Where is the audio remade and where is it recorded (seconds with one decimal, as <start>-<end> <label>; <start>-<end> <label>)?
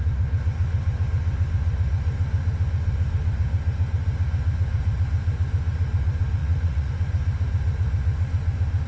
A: 0.0-6.4 recorded; 6.4-6.9 remade; 6.9-8.9 recorded